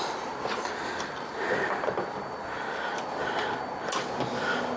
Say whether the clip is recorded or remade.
recorded